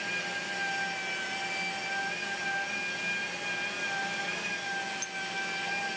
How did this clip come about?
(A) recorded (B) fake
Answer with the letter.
A